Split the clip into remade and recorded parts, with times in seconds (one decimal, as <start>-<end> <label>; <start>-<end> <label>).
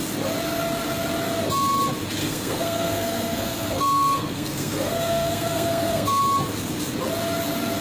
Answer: 0.0-2.2 recorded; 2.2-6.2 remade; 6.2-7.8 recorded